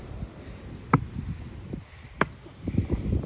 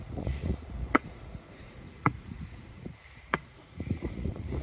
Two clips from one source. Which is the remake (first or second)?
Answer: second